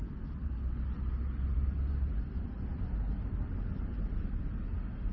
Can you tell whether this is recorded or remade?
recorded